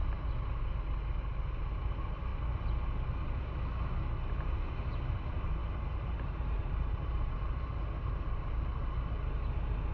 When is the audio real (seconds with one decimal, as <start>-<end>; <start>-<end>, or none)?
0.0-1.7; 2.3-4.3

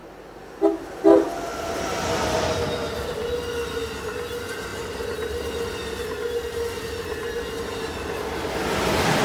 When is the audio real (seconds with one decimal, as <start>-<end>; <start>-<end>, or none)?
0.0-1.5; 3.3-9.2

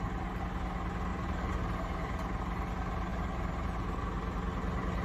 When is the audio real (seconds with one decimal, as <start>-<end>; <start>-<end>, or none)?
0.0-1.1; 2.4-3.1; 4.0-5.0

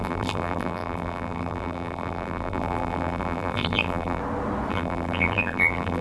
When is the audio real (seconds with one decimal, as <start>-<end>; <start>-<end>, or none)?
4.2-4.7

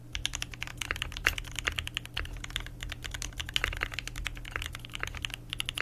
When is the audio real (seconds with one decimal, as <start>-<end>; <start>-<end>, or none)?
0.0-5.8